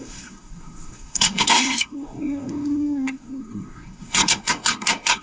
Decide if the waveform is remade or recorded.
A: remade